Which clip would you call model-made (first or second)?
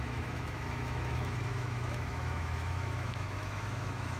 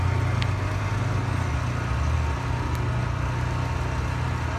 first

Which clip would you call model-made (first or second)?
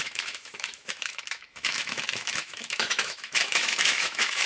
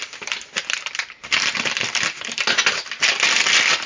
first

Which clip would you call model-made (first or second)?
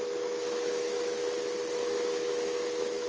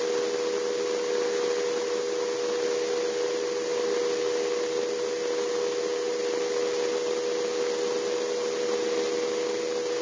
first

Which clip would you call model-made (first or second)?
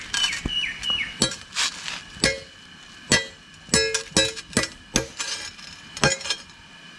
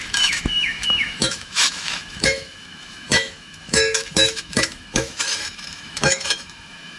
second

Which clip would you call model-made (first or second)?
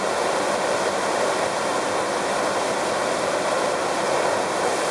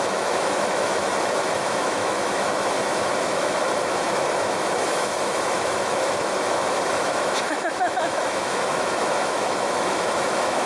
second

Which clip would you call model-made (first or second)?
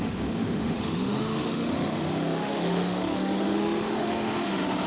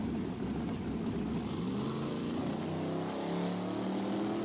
first